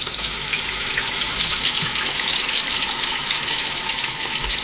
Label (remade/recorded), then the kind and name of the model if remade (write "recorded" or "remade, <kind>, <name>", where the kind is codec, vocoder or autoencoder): remade, autoencoder, DAC-VAE